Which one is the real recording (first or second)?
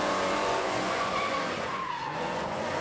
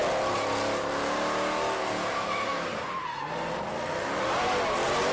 second